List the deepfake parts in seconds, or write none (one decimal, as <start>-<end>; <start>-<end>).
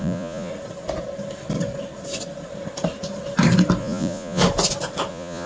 0.0-0.5; 3.8-4.4; 5.1-5.5